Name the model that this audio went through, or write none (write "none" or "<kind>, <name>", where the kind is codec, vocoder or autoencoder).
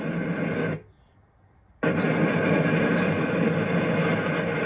none